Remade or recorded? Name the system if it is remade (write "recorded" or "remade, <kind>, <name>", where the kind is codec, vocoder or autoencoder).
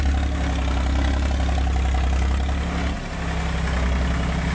recorded